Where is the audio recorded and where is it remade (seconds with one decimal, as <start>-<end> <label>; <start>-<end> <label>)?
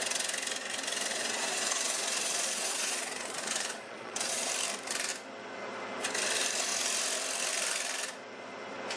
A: 0.0-1.1 recorded; 1.1-4.5 remade; 4.5-9.0 recorded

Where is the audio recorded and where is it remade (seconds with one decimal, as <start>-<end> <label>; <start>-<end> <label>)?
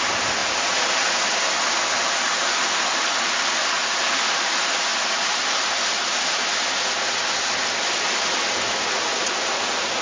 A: 0.0-10.0 recorded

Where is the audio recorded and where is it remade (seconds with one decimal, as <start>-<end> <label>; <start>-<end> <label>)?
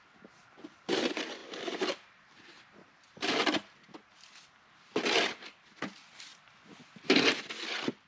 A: 0.0-8.1 recorded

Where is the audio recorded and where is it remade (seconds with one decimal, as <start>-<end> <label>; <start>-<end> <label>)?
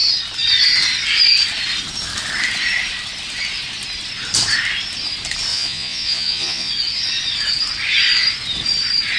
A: 0.0-5.5 recorded; 5.5-6.7 remade; 6.7-9.2 recorded